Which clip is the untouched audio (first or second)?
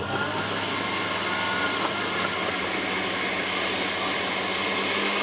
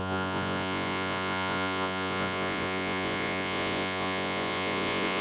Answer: first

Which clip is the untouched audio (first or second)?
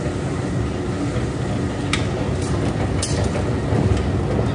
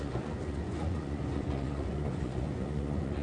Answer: first